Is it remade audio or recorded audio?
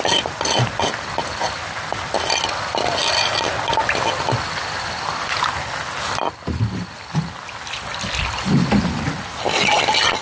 recorded